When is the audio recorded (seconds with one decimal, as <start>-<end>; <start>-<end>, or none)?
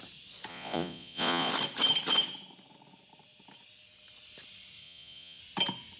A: 0.0-0.5; 1.5-4.8; 5.4-6.0